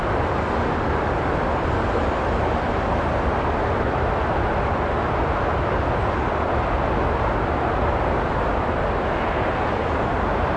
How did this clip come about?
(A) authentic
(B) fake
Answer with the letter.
A